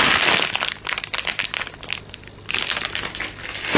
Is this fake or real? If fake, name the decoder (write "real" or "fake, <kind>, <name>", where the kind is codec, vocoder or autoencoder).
real